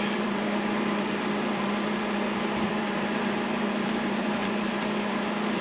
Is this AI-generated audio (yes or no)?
yes